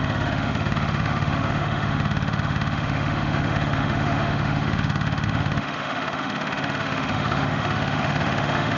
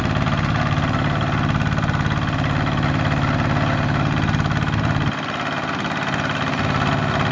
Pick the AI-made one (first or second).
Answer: first